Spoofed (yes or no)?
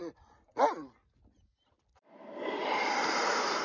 no